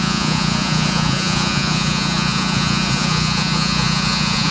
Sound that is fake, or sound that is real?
fake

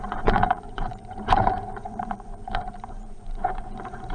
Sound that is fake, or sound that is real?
fake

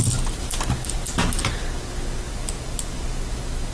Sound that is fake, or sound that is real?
real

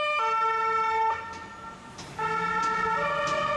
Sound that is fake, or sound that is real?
real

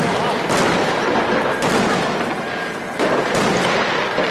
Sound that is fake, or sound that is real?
real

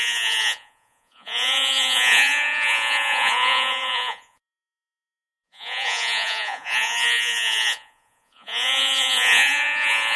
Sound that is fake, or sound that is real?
fake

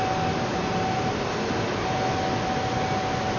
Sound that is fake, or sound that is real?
real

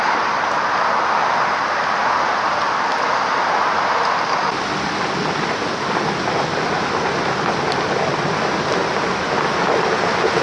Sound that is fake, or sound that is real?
real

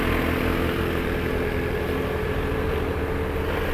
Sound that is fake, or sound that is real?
real